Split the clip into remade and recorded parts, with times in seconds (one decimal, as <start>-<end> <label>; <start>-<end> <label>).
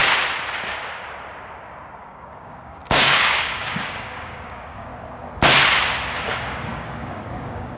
0.0-2.0 recorded; 2.0-4.9 remade; 4.9-6.1 recorded; 6.1-7.8 remade